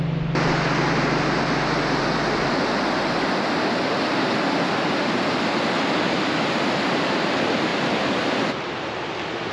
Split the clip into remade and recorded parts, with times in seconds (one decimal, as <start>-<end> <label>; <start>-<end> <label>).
0.0-9.5 recorded